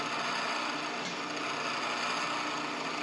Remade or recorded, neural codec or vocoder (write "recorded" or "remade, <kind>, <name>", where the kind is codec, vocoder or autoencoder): recorded